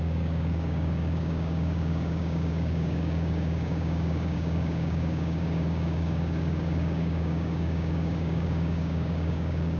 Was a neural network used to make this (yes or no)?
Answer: yes